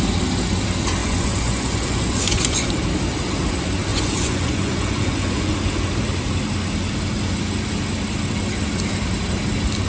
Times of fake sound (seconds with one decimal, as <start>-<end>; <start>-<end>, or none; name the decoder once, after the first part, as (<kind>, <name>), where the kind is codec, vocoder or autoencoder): 1.0-2.7 (vocoder, Vocos); 3.9-5.5